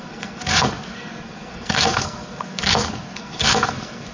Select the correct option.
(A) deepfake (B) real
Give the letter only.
A